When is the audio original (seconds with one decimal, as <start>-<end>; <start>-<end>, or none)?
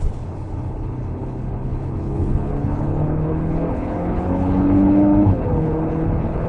none